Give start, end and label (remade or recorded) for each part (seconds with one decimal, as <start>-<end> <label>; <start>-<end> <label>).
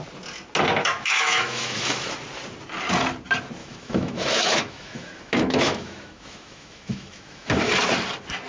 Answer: 0.0-0.8 recorded; 0.8-2.1 remade; 2.1-3.6 recorded; 3.6-7.5 remade; 7.5-8.5 recorded